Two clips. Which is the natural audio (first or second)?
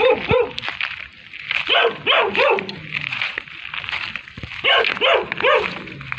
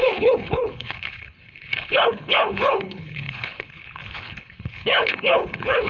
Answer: first